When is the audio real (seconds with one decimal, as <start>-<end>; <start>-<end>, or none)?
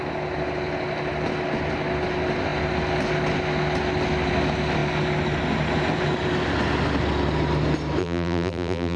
0.0-8.0